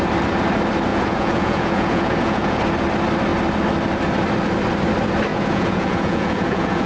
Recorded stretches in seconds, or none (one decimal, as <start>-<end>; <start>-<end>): 0.0-0.9; 2.6-5.3